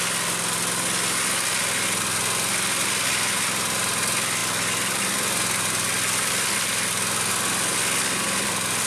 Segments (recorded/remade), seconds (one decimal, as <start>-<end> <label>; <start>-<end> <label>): 0.0-8.9 recorded